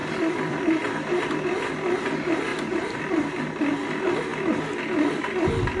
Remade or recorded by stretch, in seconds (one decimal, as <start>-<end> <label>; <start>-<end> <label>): 0.0-1.2 remade; 1.2-2.5 recorded; 2.5-3.1 remade; 3.1-5.8 recorded